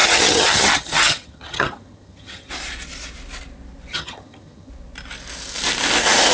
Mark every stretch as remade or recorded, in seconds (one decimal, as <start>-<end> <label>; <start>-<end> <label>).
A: 0.0-2.5 remade; 2.5-3.9 recorded; 3.9-4.7 remade; 4.7-6.3 recorded